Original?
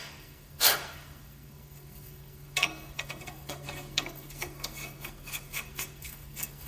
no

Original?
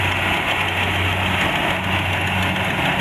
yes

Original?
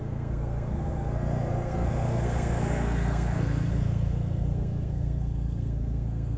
no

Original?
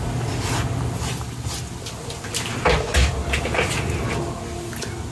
yes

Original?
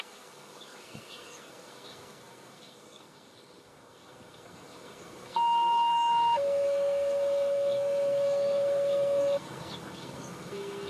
no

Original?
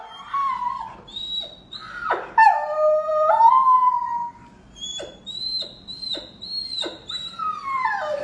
yes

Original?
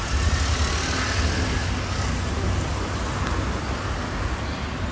yes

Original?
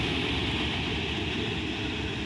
yes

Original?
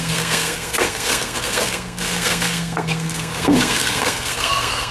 no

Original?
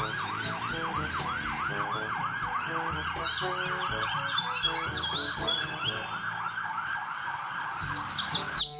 yes